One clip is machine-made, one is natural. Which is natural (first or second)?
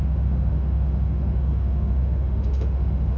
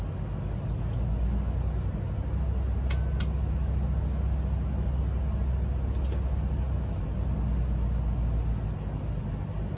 second